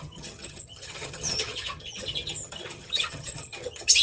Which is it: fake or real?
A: fake